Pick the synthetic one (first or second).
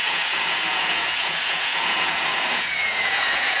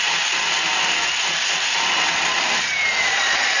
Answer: first